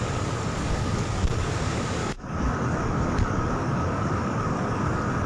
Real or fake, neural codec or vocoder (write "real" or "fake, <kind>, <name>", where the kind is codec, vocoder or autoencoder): fake, codec, DAC